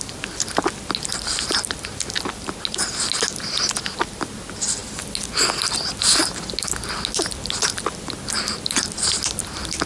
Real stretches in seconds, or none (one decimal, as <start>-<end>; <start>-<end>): 0.0-9.9